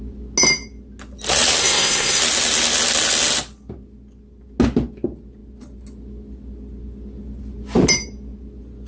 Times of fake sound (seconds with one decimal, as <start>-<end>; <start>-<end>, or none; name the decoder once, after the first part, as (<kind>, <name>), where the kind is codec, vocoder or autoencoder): 1.6-2.2 (codec, SNAC)